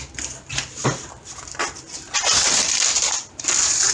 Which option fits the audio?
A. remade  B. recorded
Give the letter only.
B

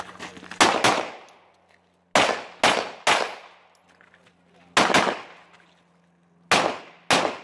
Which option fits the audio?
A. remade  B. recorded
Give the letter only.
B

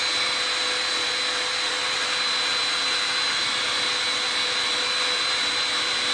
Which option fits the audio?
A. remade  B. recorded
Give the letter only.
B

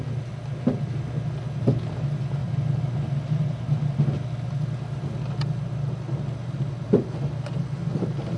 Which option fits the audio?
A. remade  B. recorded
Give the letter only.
B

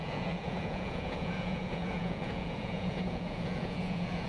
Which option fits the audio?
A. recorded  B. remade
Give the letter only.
B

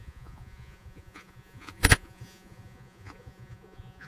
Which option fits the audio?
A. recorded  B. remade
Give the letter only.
B